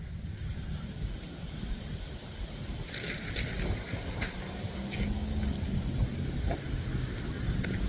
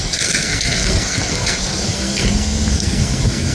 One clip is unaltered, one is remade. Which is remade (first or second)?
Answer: second